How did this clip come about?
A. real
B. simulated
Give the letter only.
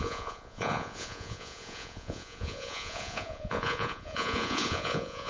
B